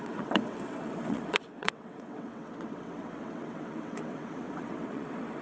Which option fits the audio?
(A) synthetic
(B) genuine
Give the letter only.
A